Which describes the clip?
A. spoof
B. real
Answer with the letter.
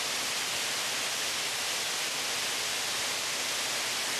B